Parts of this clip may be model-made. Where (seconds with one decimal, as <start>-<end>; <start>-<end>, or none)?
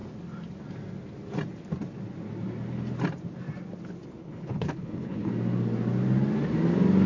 4.2-5.3